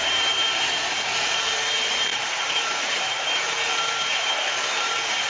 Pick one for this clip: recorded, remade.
remade